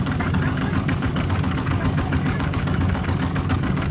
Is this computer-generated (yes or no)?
yes